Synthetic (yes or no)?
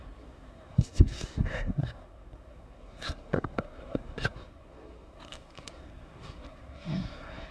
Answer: yes